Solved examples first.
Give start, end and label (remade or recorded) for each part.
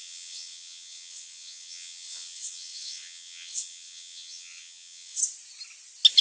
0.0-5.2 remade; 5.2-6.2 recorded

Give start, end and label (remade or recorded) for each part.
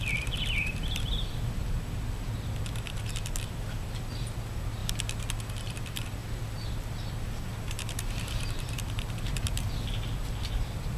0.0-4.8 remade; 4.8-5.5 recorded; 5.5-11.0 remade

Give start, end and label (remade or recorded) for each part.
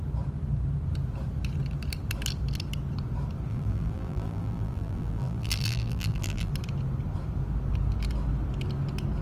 0.0-3.5 recorded; 3.5-6.5 remade; 6.5-9.2 recorded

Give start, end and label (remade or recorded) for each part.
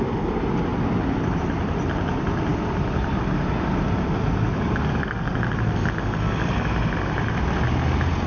0.0-8.3 recorded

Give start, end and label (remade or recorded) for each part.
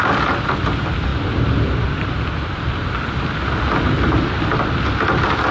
0.0-5.5 recorded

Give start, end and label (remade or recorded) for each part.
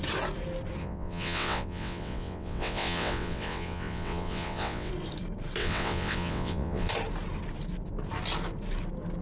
0.0-0.8 recorded; 0.8-4.9 remade; 4.9-5.6 recorded; 5.6-6.9 remade; 6.9-9.2 recorded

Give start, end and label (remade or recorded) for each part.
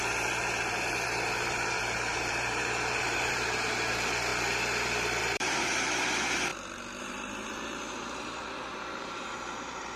0.0-4.3 remade; 4.3-5.2 recorded; 5.2-6.5 remade; 6.5-7.0 recorded; 7.0-10.0 remade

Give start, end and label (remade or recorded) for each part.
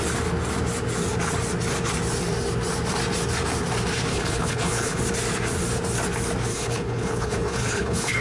0.0-4.1 recorded; 4.1-5.0 remade; 5.0-6.5 recorded; 6.5-8.2 remade